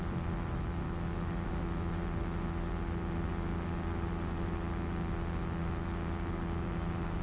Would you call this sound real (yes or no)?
yes